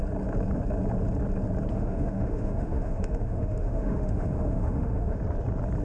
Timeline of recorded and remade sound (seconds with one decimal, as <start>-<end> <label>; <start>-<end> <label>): 0.0-1.7 recorded; 1.7-5.2 remade; 5.2-5.8 recorded